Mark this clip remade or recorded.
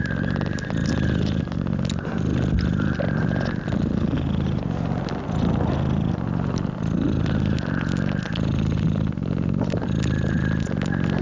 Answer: recorded